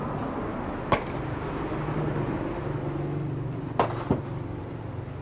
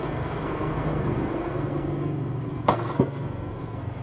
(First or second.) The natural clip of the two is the first